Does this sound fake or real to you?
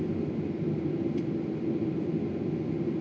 real